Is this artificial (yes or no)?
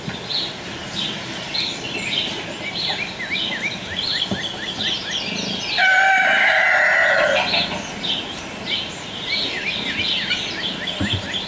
no